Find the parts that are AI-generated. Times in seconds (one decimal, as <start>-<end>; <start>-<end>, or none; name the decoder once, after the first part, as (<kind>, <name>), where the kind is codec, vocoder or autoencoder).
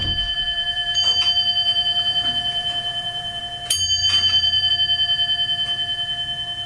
0.0-3.4 (vocoder, Vocos); 4.0-4.7